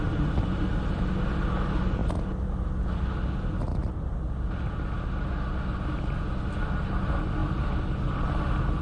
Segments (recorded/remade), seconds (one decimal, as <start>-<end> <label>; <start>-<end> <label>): 0.0-8.8 recorded